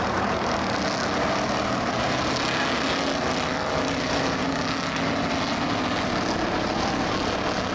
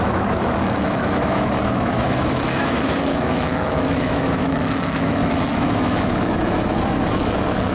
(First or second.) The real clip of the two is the first